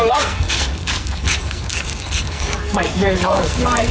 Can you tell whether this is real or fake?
fake